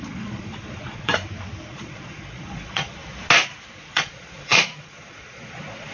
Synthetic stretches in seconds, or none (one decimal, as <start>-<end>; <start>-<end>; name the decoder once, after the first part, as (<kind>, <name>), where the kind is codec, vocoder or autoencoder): 0.0-1.1 (vocoder, Vocos); 1.7-3.0; 3.8-5.9